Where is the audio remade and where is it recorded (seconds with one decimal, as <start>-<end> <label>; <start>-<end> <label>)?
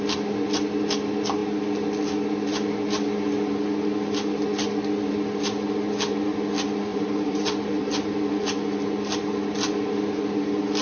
0.0-6.9 recorded; 6.9-7.9 remade; 7.9-10.8 recorded